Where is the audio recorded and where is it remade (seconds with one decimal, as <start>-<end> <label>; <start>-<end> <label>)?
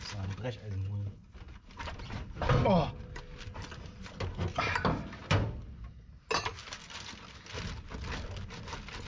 0.0-9.1 recorded